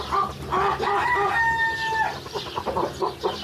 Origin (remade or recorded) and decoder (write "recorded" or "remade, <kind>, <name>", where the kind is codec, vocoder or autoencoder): recorded